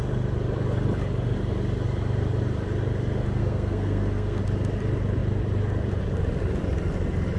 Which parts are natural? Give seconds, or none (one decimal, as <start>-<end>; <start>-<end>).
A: 0.0-3.4; 4.4-7.4